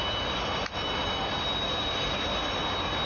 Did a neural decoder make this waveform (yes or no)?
no